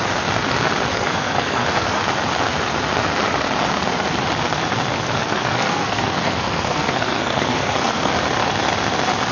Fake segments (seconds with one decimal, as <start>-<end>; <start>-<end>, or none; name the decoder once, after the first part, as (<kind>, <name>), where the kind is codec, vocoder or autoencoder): 0.9-2.0 (codec, SNAC); 5.2-8.1